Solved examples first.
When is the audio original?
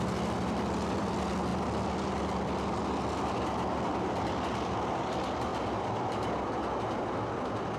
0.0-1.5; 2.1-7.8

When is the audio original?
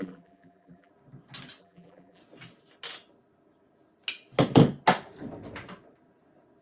0.9-1.6; 2.2-6.6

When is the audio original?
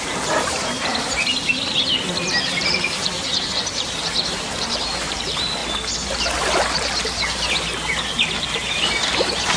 0.9-2.3; 5.6-8.4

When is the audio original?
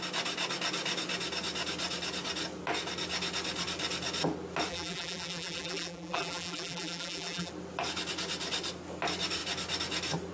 0.0-4.7; 7.5-10.3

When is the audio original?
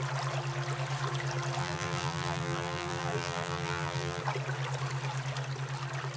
0.0-1.6; 4.2-6.2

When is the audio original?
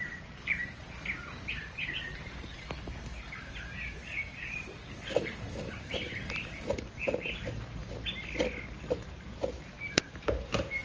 0.8-1.5; 7.8-8.9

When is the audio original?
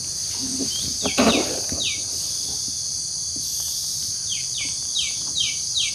0.0-0.5; 2.2-3.2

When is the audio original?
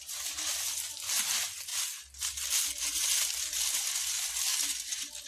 4.5-5.3